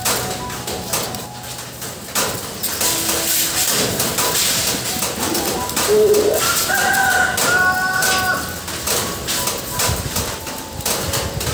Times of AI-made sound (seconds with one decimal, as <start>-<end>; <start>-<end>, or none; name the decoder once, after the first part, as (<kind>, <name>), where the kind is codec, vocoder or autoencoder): none